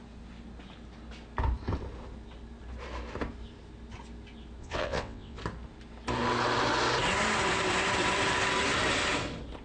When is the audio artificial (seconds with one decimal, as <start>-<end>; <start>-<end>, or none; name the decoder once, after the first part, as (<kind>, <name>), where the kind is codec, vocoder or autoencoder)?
4.6-5.4 (vocoder, WaveNeXt)